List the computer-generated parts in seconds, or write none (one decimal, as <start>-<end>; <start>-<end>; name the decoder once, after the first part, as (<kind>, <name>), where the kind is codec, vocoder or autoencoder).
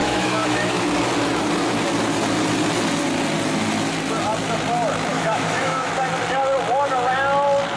0.0-0.8 (autoencoder, DAC-VAE); 5.1-5.9